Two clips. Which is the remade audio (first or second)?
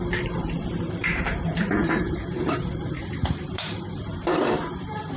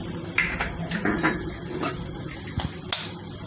first